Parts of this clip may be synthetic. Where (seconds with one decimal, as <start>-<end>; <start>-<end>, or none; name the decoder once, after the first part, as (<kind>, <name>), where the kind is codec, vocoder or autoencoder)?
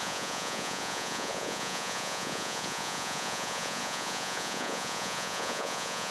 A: 0.0-6.1 (vocoder, Vocos)